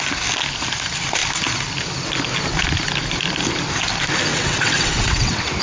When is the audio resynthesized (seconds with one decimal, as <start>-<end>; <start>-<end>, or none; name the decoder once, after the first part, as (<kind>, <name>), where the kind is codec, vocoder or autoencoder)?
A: 4.3-5.6 (vocoder, WaveNeXt)